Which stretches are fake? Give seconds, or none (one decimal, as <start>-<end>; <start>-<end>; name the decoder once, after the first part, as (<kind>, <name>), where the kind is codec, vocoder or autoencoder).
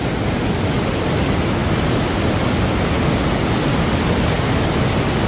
none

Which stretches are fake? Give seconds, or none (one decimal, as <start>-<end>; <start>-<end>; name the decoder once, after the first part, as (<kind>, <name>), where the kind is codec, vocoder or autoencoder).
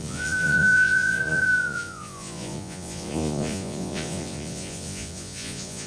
0.0-5.9 (vocoder, Vocos)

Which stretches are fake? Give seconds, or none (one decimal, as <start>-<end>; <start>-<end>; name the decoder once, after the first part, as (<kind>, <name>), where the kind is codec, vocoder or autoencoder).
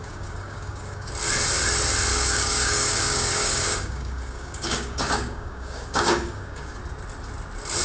0.0-1.1 (codec, DAC); 2.1-6.8